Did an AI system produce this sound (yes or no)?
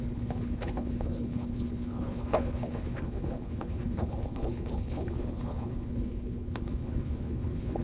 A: yes